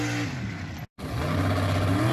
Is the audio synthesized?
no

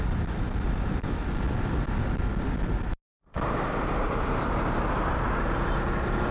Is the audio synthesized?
no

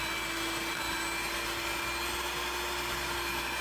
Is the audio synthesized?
no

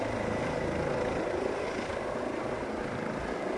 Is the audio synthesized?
no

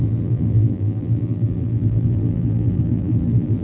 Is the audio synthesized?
yes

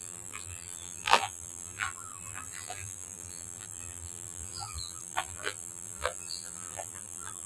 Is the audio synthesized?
yes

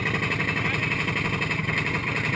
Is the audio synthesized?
no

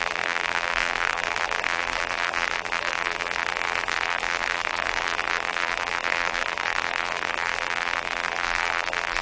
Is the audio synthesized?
yes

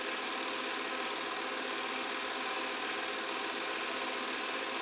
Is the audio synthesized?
no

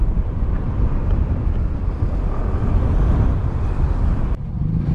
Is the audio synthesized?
no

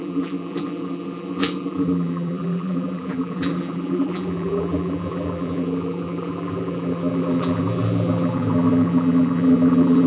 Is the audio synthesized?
yes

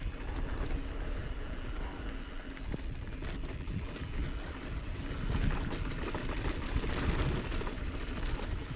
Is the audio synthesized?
no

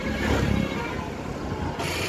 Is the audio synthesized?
yes